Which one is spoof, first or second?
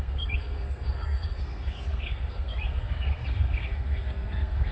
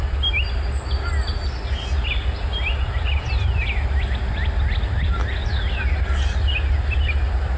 first